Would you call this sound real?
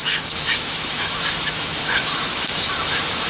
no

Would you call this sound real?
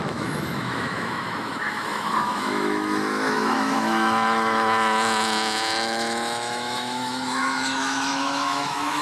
no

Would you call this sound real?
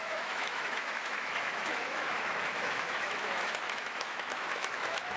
no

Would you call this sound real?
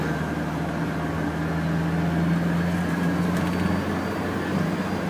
yes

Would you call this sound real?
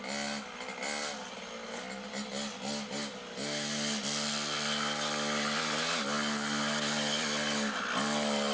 yes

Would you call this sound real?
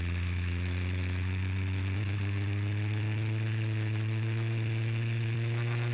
no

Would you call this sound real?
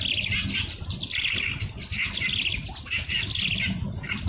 yes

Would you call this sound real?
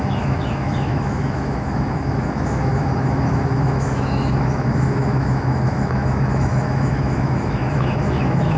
no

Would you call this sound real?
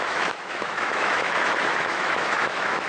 no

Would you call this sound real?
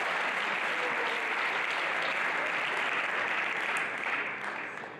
yes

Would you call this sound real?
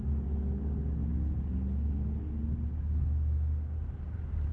yes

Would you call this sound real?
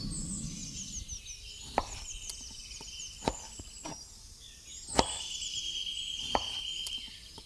yes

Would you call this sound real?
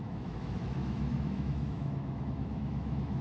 no